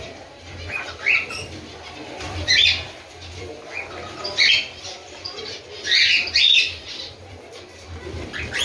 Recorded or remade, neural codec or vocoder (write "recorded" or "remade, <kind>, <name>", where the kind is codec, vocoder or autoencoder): remade, vocoder, BigVGAN v2